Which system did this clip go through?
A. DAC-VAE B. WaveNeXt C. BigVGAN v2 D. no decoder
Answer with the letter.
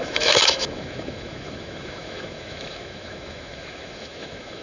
A